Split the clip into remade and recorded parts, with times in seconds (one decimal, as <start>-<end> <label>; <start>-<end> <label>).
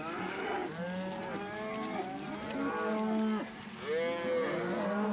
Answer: 0.0-5.1 recorded